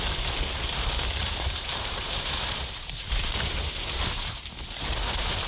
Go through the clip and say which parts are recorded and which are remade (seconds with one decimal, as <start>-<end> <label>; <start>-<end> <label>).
0.0-1.2 recorded; 1.2-4.5 remade; 4.5-5.5 recorded